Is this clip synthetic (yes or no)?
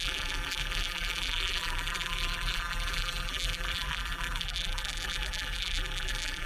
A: yes